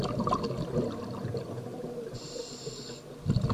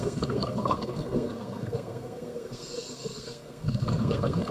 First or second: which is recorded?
first